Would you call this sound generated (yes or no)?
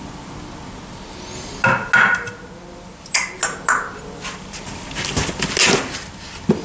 no